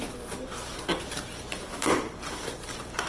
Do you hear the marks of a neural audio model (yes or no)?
no